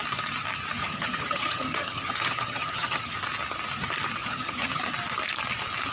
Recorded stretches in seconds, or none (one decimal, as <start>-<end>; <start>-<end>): 0.0-0.8; 3.0-4.2; 4.8-5.9